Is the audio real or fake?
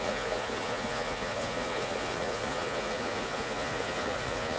fake